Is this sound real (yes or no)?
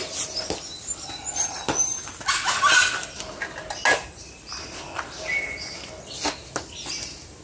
yes